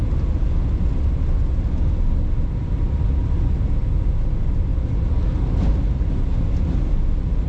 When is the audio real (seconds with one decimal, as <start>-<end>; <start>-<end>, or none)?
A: 0.0-7.5